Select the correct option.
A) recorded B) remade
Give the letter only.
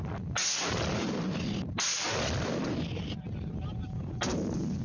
A